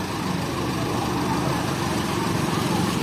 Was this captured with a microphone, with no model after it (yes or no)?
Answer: no